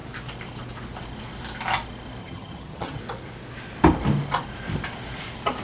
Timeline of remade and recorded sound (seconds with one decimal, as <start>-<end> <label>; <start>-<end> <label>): 0.0-2.2 recorded; 2.2-3.0 remade; 3.0-5.6 recorded